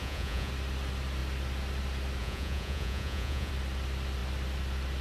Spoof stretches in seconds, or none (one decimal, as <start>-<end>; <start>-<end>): 0.0-0.5; 2.2-3.5

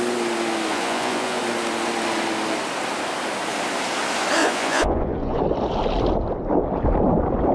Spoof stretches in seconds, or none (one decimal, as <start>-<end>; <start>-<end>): 0.7-1.4; 4.4-5.4

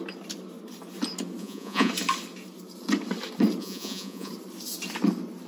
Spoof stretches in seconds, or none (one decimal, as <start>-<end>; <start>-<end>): 1.4-1.9; 3.6-4.3

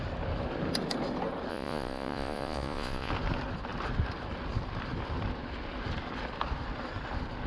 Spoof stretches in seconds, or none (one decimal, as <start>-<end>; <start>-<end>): 1.5-3.1

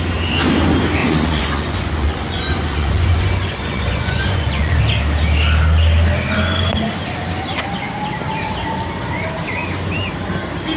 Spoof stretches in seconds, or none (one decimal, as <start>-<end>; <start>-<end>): 1.0-4.8